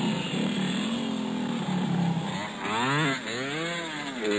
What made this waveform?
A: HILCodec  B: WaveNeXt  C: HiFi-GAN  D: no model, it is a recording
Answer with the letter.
D